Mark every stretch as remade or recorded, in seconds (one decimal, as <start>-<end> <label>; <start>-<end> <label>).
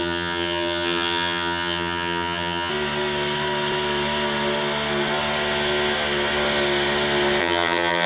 0.0-2.7 remade; 2.7-7.4 recorded; 7.4-8.1 remade